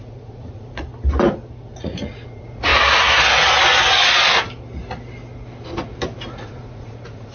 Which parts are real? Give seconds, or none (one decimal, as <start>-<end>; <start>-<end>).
0.9-1.7; 2.7-6.3